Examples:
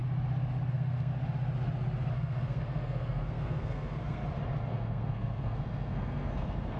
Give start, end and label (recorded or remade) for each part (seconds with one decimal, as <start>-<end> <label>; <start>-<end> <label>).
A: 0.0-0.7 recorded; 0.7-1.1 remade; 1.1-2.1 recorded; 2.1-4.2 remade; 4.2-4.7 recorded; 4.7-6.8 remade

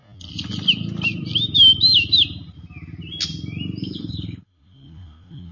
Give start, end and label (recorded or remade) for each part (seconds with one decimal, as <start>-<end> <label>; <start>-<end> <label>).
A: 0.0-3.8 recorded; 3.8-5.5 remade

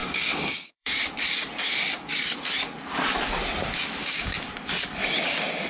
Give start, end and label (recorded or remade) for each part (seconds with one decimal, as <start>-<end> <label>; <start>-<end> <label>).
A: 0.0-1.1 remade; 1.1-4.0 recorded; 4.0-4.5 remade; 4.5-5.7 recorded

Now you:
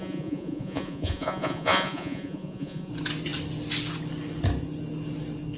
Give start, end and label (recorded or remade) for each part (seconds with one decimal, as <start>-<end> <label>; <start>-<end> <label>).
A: 0.0-2.9 remade; 2.9-5.6 recorded

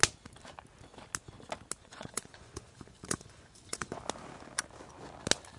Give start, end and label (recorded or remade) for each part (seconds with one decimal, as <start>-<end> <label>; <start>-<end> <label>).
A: 0.0-1.8 recorded; 1.8-4.0 remade; 4.0-5.6 recorded

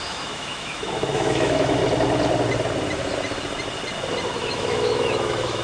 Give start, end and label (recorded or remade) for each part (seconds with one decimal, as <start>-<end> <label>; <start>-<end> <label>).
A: 0.0-1.8 remade; 1.8-4.4 recorded; 4.4-5.6 remade